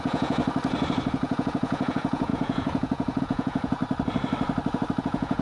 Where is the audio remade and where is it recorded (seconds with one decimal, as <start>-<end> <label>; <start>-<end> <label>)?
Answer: 0.0-0.4 remade; 0.4-1.1 recorded; 1.1-3.8 remade; 3.8-5.0 recorded; 5.0-5.4 remade